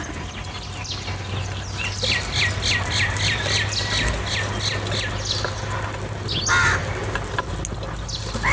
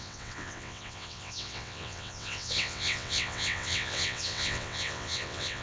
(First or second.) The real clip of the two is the first